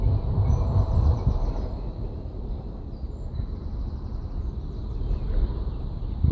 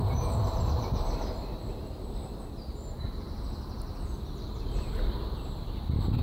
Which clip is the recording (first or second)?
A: second